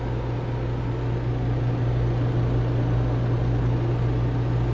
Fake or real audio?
real